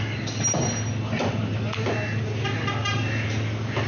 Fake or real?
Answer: real